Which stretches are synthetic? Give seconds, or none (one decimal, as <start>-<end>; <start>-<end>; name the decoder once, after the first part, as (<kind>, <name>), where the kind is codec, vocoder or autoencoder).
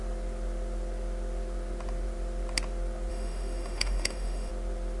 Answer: 3.1-4.5 (autoencoder, DAC-VAE)